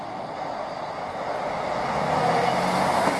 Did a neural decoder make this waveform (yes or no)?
no